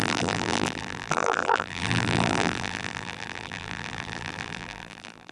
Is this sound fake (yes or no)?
yes